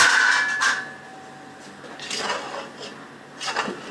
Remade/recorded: recorded